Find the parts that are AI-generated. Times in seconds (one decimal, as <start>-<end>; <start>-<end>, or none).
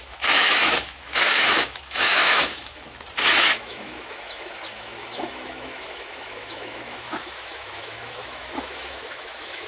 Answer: 0.0-9.7